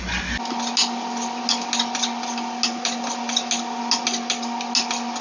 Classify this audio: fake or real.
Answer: real